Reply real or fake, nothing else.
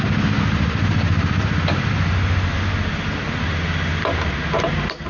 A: real